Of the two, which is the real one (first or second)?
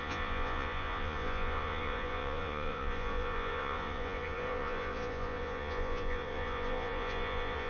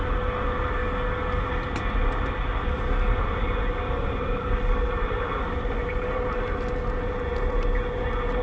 second